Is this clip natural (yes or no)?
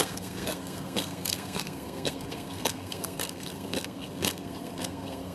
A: no